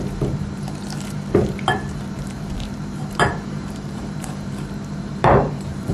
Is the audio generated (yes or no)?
yes